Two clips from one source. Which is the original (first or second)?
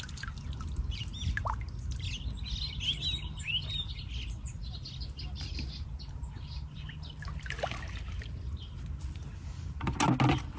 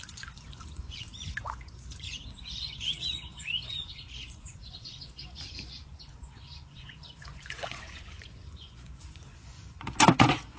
first